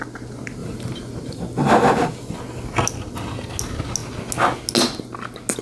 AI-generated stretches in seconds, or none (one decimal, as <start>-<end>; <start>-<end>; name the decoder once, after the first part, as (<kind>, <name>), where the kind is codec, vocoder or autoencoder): 0.6-1.7 (vocoder, BigVGAN v2)